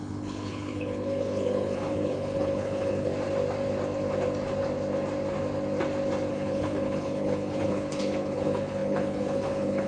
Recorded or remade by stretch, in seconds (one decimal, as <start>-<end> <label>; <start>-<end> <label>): 0.0-3.1 remade; 3.1-6.3 recorded; 6.3-9.9 remade